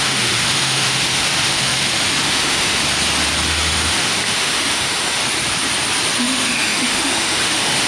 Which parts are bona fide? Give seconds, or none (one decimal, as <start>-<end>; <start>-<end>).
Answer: 2.8-3.5; 5.2-6.2